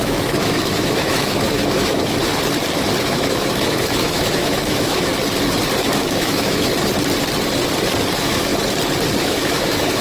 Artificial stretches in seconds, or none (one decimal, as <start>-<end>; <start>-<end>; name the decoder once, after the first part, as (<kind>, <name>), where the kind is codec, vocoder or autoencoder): 0.0-2.3 (autoencoder, DAC-VAE); 3.0-5.1; 5.8-6.7; 8.1-8.5; 9.2-10.0